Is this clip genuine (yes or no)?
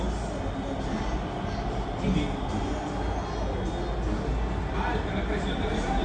yes